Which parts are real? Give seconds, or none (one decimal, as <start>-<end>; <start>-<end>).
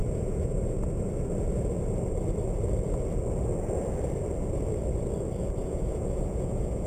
0.8-5.6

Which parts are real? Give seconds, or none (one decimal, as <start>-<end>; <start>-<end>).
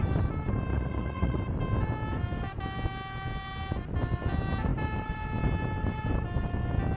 0.0-0.7; 1.4-7.0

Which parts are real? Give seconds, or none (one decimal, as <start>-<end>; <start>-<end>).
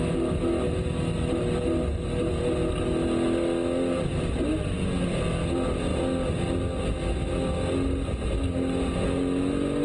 0.0-9.8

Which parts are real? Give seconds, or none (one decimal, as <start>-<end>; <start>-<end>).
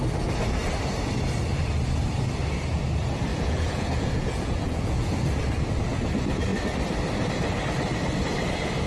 0.0-3.3; 5.2-8.9